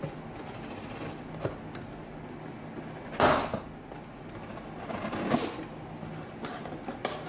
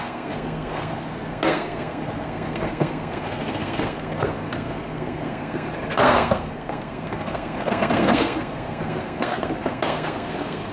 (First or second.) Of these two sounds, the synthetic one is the second